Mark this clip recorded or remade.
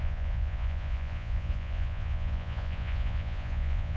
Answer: remade